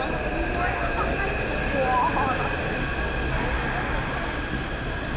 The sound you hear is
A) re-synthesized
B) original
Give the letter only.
B